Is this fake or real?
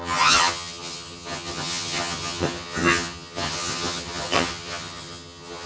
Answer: fake